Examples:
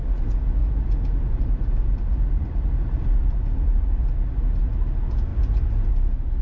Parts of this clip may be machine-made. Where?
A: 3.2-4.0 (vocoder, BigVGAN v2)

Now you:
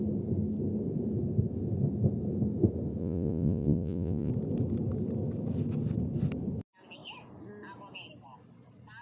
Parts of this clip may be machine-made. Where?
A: 3.0-4.3 (vocoder, Vocos)

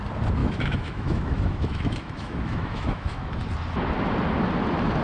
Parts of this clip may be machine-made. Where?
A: 0.4-3.4 (autoencoder, DAC-VAE)

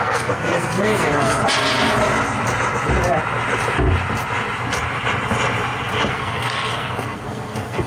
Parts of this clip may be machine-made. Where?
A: 0.0-1.4 (codec, SNAC); 6.1-7.9

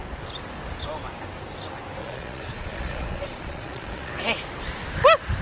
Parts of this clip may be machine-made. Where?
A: 2.0-4.1 (vocoder, Vocos)

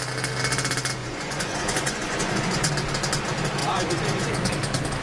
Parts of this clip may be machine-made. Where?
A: 1.0-2.7 (vocoder, Vocos); 3.6-4.5